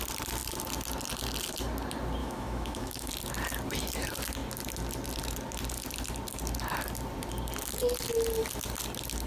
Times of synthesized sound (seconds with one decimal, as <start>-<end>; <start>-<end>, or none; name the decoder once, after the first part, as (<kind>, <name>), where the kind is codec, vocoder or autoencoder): 2.2-3.1 (autoencoder, DAC-VAE)